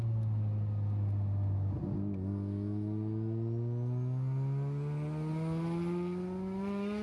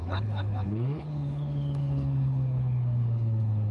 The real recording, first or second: first